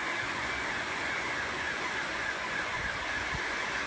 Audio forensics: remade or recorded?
remade